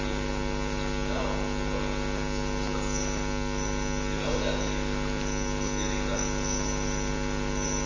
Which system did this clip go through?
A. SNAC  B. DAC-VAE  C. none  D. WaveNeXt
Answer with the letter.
C